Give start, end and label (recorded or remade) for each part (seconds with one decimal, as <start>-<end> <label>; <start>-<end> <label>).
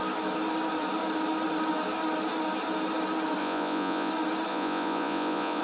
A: 0.0-3.4 recorded; 3.4-4.1 remade; 4.1-4.5 recorded; 4.5-5.6 remade